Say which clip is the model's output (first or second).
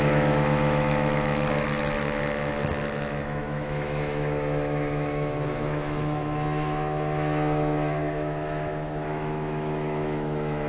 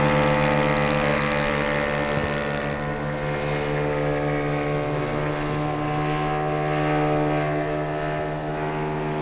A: first